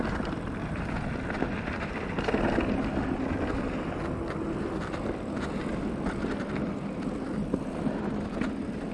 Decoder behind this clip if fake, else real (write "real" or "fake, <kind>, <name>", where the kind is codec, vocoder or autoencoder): real